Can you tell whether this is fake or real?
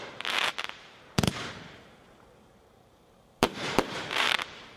fake